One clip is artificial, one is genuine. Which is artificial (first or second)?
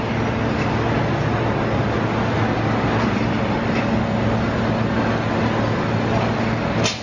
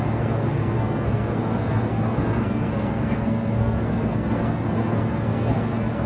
second